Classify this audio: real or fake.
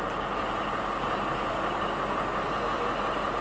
real